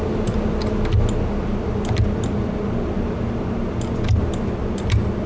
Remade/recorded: recorded